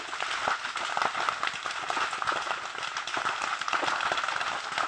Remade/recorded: recorded